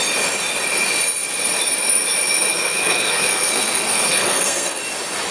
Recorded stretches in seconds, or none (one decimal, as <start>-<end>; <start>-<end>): 0.0-2.5; 4.8-5.3